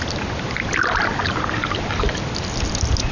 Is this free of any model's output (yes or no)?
yes